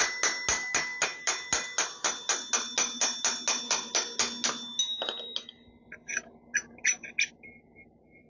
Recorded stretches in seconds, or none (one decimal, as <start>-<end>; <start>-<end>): 0.0-8.3